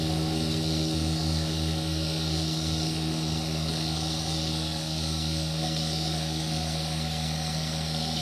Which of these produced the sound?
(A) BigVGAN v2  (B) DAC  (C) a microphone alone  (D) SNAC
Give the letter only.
D